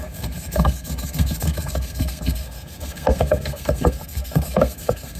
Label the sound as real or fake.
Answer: fake